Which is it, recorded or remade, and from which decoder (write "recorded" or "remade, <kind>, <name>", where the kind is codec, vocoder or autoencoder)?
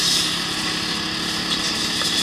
recorded